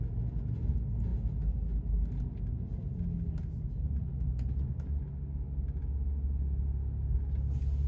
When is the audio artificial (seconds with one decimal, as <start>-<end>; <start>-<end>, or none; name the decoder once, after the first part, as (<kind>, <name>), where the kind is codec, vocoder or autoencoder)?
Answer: none